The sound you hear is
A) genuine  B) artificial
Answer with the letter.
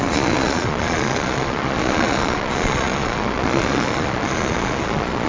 B